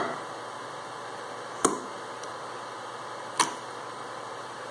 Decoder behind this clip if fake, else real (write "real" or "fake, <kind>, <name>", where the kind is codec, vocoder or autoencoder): real